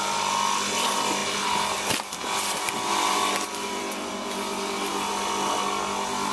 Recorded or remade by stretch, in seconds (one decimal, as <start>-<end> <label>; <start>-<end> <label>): 0.0-6.3 recorded